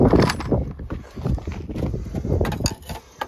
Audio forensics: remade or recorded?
recorded